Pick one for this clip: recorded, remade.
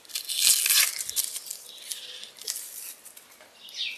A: recorded